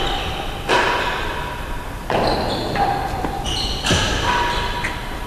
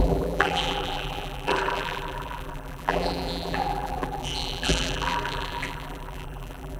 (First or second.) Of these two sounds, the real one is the first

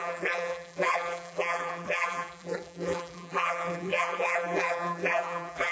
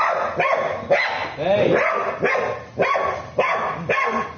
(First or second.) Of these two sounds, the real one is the second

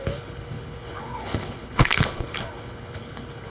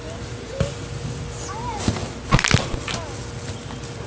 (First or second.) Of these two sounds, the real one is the second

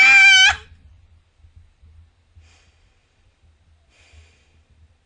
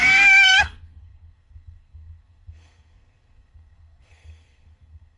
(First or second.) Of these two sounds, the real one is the first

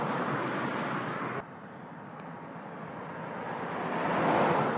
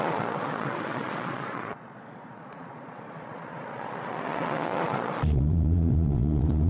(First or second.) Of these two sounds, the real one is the first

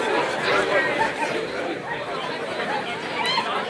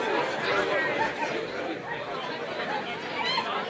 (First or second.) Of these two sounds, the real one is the second